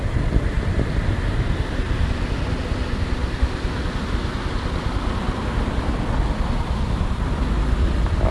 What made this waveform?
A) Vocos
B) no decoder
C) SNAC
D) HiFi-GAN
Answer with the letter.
B